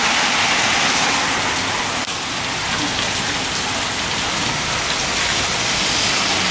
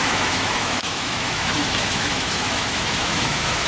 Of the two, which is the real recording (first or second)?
first